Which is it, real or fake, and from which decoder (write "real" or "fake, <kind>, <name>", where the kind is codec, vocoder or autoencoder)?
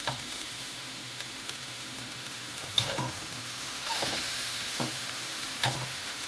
fake, autoencoder, DAC-VAE